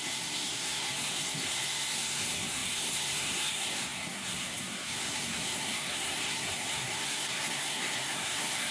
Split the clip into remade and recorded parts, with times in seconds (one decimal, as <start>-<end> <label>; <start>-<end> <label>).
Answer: 0.0-8.7 remade